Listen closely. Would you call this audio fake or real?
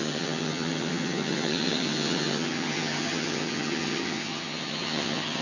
fake